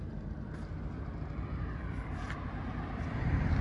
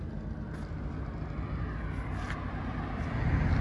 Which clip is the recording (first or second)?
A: second